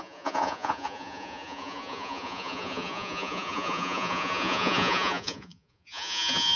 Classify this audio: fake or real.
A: fake